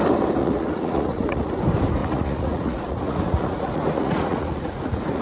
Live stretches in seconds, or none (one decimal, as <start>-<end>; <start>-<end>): 0.0-0.4; 1.5-2.0